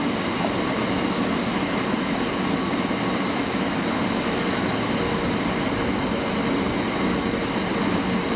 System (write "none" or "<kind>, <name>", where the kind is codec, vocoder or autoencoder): none